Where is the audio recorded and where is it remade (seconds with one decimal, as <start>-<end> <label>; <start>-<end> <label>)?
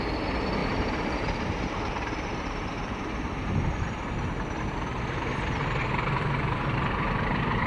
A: 0.0-0.6 recorded; 0.6-3.5 remade; 3.5-7.7 recorded